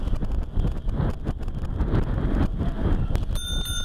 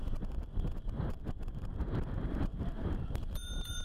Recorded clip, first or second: first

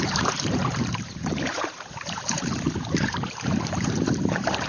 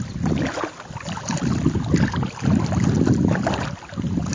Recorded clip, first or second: second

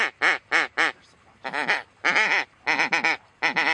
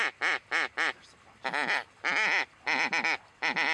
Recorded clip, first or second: second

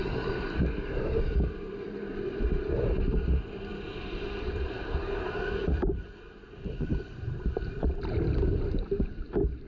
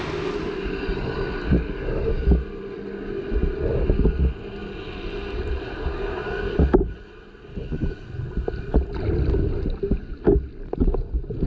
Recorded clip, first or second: second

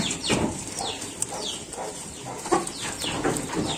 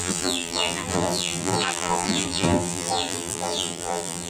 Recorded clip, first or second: first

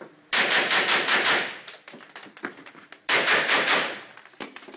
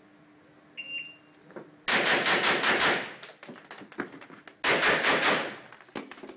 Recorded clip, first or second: second